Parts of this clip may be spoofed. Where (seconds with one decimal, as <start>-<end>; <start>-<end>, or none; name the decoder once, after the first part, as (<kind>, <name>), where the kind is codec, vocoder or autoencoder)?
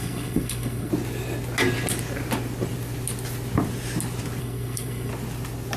0.0-0.9 (codec, SNAC); 4.4-5.1